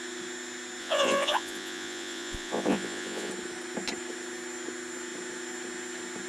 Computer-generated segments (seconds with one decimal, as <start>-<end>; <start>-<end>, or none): 0.8-3.3